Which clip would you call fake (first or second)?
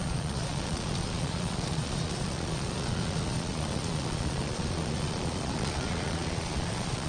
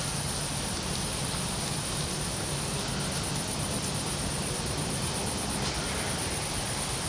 first